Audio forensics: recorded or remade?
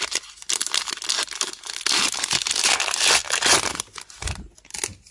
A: recorded